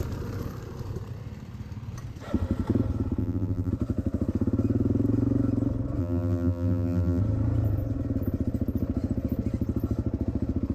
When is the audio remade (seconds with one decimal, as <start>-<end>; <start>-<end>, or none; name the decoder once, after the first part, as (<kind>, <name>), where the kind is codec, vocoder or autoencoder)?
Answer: 3.2-3.7 (vocoder, BigVGAN v2); 6.0-7.2